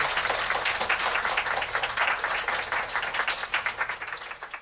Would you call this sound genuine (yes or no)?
yes